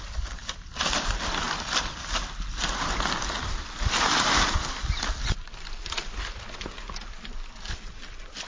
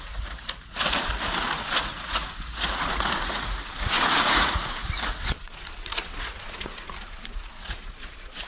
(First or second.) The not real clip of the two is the second